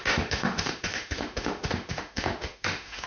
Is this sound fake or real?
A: fake